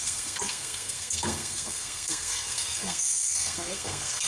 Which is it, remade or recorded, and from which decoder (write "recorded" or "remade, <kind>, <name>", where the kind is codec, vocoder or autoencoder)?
remade, codec, SNAC